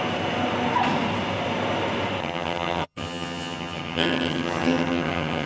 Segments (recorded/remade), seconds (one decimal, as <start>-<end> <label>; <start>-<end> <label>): 0.0-2.2 recorded; 2.2-5.5 remade